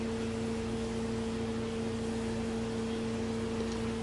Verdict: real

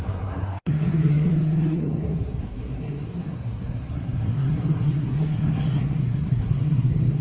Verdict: fake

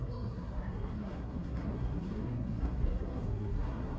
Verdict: fake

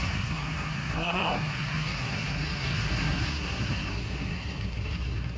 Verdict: fake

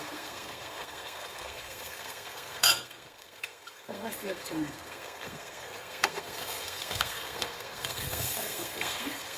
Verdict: fake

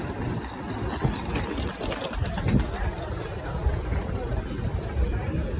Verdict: real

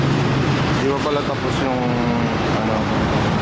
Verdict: real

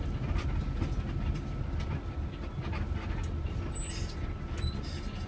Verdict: real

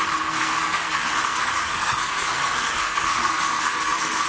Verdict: fake